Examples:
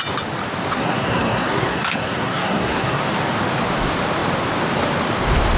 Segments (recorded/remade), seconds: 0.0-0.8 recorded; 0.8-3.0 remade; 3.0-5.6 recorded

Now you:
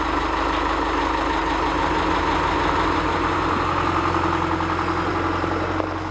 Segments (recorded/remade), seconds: 0.0-6.1 recorded

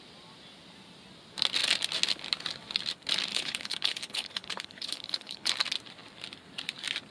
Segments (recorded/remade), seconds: 0.0-3.3 recorded; 3.3-5.5 remade; 5.5-7.1 recorded

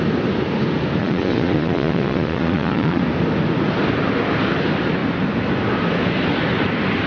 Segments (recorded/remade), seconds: 0.0-1.0 recorded; 1.0-3.0 remade; 3.0-7.1 recorded

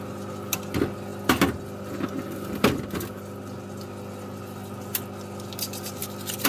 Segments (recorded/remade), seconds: 0.0-6.5 recorded